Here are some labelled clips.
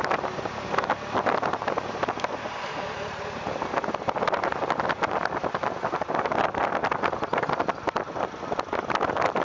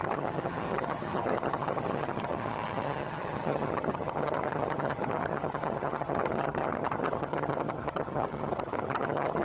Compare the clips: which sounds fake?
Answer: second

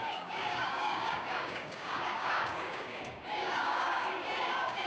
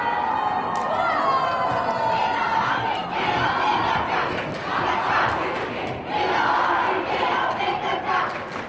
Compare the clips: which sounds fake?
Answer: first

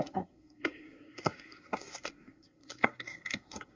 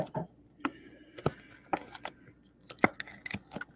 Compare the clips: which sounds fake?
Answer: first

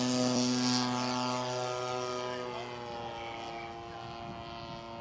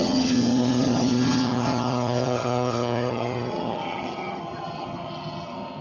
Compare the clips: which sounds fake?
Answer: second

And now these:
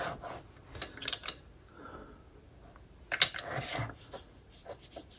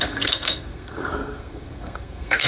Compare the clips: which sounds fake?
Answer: second